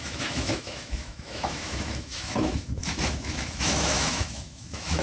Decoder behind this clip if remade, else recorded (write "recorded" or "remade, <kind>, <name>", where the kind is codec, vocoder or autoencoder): remade, autoencoder, DAC-VAE